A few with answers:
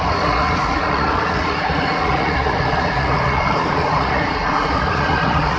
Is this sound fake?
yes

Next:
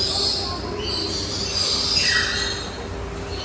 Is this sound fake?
no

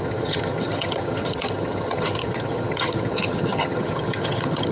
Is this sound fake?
yes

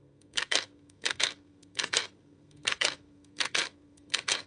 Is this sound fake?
yes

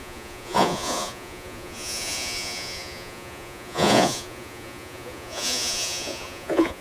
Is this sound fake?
yes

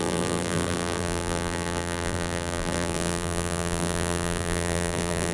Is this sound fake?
yes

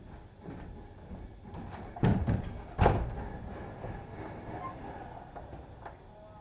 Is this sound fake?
no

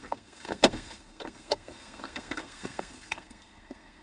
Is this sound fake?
yes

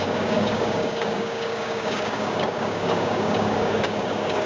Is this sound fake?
yes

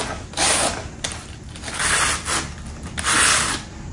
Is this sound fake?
no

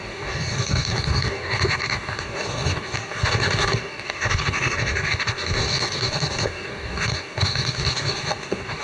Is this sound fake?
yes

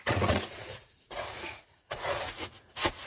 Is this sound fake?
yes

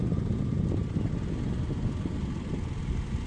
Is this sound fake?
no